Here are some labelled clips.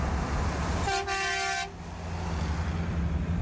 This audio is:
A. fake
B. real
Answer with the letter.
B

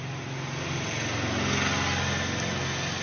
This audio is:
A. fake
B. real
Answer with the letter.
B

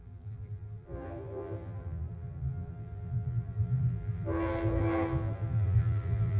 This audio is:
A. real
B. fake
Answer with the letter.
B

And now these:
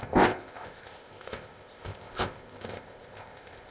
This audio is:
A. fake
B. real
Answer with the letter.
A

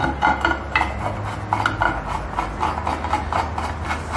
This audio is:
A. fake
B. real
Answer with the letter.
B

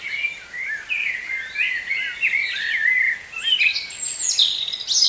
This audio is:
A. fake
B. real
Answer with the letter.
B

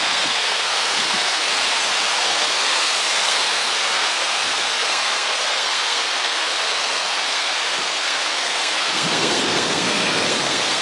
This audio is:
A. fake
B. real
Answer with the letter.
A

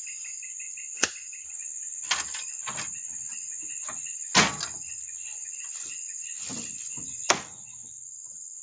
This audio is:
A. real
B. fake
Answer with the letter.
A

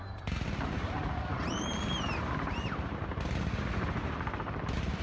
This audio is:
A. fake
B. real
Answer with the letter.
A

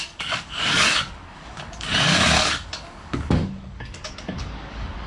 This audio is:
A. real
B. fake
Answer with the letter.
B